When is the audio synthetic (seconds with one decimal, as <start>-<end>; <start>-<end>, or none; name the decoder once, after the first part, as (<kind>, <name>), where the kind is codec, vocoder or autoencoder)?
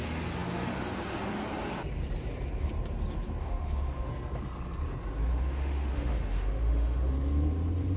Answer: 3.4-4.1 (autoencoder, DAC-VAE); 5.3-7.1